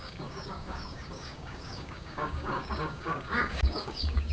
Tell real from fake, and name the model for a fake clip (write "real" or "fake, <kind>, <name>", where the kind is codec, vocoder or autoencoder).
fake, codec, DAC